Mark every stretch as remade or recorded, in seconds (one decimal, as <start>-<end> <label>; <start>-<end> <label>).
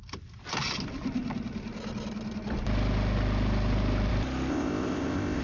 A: 0.0-4.5 recorded; 4.5-5.4 remade